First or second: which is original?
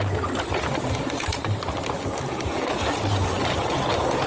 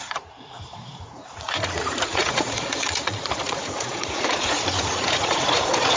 first